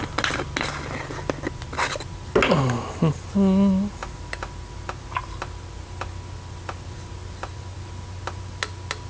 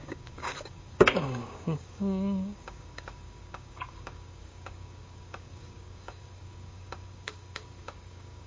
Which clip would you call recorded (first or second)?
first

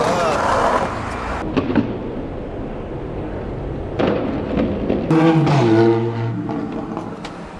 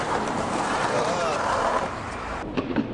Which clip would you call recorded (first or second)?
first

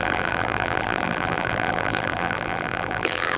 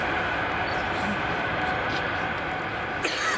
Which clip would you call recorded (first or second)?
second